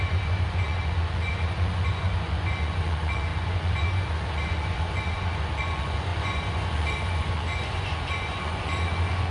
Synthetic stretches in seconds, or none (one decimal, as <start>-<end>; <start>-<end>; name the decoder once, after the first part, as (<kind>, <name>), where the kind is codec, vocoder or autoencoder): 0.0-9.3 (vocoder, Vocos)

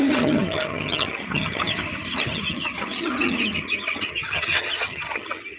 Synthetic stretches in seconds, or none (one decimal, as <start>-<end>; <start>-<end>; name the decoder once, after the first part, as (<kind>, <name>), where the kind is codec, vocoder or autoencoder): 0.0-5.6 (vocoder, HiFi-GAN)

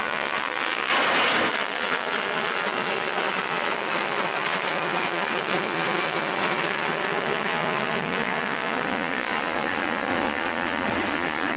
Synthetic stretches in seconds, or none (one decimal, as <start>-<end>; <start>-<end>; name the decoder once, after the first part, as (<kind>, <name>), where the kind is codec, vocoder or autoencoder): 0.0-0.9 (vocoder, Vocos); 1.5-11.6

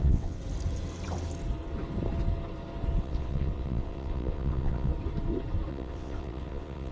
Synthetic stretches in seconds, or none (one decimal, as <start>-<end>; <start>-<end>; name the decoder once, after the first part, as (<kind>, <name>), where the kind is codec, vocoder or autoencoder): 0.0-0.4 (vocoder, WaveNeXt); 3.0-4.9; 5.7-6.9

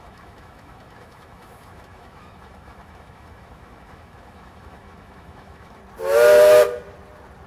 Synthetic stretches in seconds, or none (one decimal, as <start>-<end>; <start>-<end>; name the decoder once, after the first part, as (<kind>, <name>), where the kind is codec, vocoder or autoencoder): 0.0-5.8 (autoencoder, DAC-VAE)

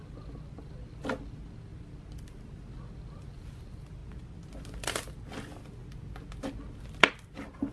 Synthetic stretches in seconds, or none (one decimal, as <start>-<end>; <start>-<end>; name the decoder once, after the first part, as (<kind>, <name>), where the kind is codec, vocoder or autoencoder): none